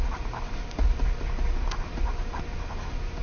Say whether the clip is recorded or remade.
recorded